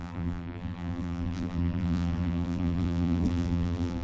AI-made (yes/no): yes